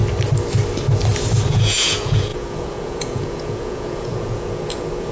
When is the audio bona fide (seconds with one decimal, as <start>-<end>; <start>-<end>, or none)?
0.0-1.5